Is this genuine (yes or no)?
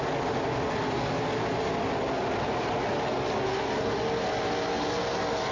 yes